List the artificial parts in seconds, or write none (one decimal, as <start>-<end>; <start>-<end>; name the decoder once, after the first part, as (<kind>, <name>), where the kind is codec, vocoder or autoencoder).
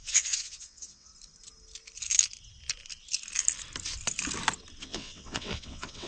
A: 0.0-1.1 (vocoder, WaveNeXt); 4.8-6.1